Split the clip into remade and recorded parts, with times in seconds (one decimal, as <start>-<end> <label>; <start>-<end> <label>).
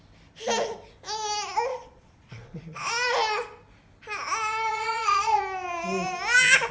0.0-1.7 recorded; 1.7-2.9 remade; 2.9-4.7 recorded; 4.7-5.4 remade; 5.4-6.7 recorded